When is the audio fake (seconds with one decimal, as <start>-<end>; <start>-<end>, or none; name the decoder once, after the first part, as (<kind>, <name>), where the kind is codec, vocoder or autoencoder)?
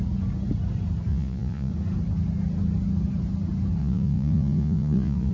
1.1-1.7 (vocoder, Vocos); 3.8-5.3